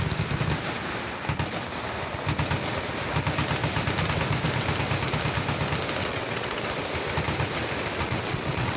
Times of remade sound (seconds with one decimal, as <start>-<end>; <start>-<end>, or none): 6.0-6.7; 8.0-8.8

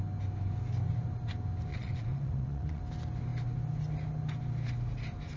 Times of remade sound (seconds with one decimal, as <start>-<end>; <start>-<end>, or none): 1.7-2.8

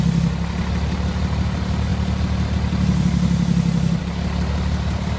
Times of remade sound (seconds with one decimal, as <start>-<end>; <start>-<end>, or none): none

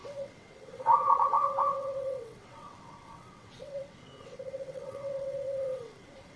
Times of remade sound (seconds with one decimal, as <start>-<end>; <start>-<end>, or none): 0.0-6.4

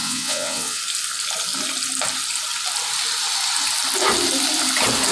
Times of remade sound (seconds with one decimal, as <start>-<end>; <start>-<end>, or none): 0.0-0.8

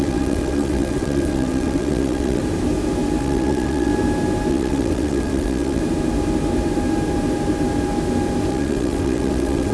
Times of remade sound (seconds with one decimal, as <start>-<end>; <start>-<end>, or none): 0.0-2.4; 3.2-3.9; 4.5-5.8; 8.5-9.7

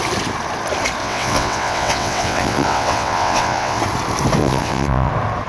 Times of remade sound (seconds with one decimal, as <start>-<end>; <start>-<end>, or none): 1.0-3.8; 4.4-5.1